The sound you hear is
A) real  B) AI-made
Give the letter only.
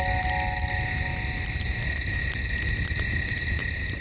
A